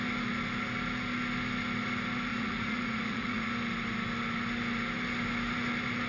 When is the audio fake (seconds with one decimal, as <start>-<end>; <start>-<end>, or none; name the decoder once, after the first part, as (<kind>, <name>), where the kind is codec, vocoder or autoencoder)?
2.3-3.5 (vocoder, Vocos)